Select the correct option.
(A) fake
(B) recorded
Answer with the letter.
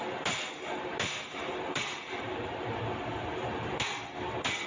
B